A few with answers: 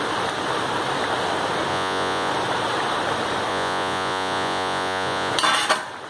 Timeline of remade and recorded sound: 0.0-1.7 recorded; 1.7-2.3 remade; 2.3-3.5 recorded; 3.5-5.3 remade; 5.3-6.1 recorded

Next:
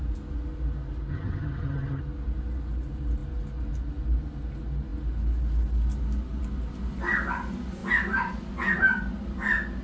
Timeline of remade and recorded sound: 0.0-1.1 recorded; 1.1-2.0 remade; 2.0-9.8 recorded

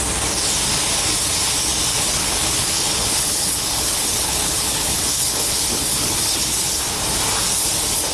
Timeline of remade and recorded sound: 0.0-1.9 recorded; 1.9-6.8 remade; 6.8-8.1 recorded